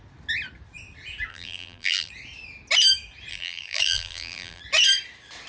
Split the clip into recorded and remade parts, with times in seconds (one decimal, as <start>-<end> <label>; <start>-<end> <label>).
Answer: 0.0-1.3 recorded; 1.3-2.1 remade; 2.1-3.3 recorded; 3.3-4.6 remade; 4.6-5.5 recorded